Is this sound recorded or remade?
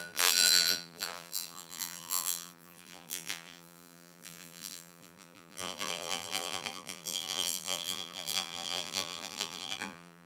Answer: remade